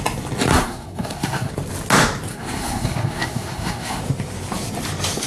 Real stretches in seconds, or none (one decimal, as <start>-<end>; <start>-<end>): 0.0-0.5; 1.5-2.3; 4.0-5.3